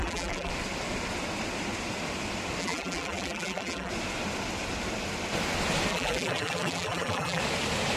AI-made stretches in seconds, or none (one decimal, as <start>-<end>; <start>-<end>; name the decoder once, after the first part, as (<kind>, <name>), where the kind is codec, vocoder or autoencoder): 0.0-0.5 (vocoder, BigVGAN v2); 2.6-3.9; 5.9-7.4